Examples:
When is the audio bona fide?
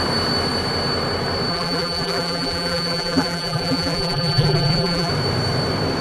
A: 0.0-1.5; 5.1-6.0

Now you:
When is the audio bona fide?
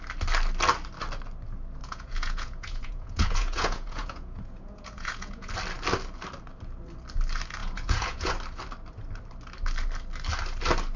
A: 0.0-1.8; 5.5-7.6; 8.3-11.0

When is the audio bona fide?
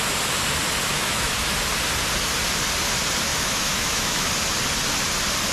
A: 0.0-0.9; 1.5-3.3; 4.3-5.5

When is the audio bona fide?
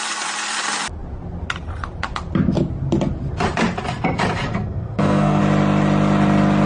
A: 0.0-4.5; 5.4-6.7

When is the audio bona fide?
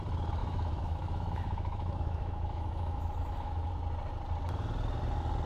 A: 0.0-0.4; 3.7-5.5